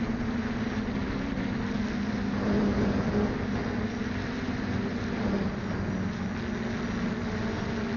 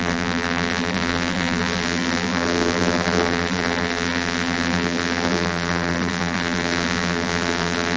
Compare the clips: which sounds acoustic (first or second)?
first